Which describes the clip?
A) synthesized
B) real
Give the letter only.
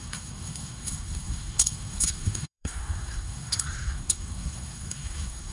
A